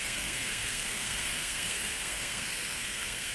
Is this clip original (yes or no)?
no